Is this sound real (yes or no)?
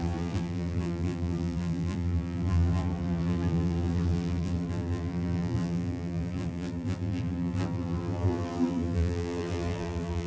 no